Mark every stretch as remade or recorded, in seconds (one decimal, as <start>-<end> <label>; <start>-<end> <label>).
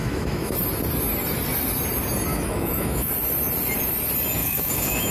0.0-0.6 remade; 0.6-2.3 recorded; 2.3-3.1 remade; 3.1-4.4 recorded; 4.4-5.1 remade